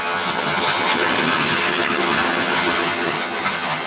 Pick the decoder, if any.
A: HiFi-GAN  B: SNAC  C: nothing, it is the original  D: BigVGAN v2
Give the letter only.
A